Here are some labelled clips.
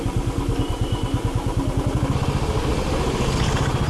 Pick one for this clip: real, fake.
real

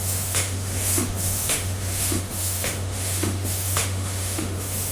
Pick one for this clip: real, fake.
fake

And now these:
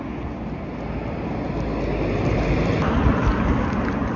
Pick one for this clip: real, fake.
real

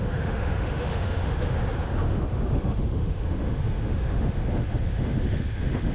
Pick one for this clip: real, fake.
fake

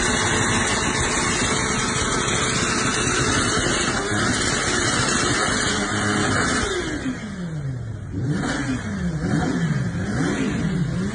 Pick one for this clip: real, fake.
real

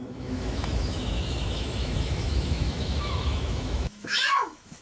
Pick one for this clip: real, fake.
fake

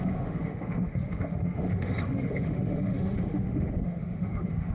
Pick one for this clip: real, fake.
fake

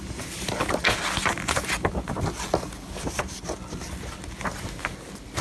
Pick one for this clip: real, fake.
real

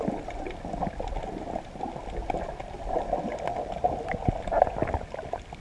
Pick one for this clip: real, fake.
real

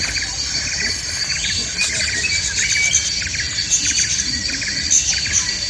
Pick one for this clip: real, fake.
real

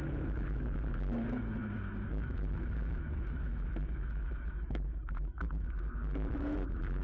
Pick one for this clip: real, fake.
fake